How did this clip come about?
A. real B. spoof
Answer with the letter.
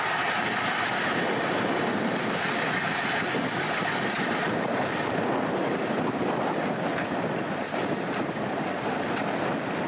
A